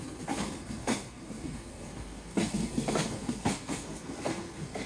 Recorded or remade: remade